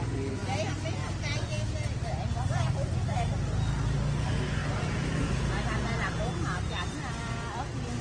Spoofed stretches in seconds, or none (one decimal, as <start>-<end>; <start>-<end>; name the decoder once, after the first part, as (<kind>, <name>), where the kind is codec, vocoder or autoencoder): 4.6-5.4 (vocoder, BigVGAN v2)